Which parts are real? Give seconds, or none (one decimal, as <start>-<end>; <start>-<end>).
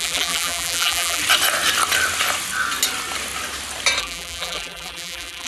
1.2-4.0